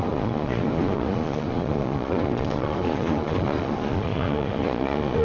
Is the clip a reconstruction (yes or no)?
yes